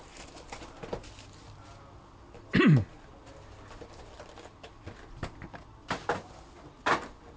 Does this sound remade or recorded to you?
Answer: recorded